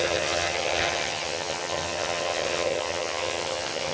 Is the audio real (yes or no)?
no